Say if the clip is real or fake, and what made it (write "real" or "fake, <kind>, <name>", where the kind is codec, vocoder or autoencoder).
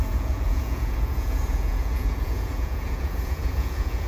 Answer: fake, vocoder, Vocos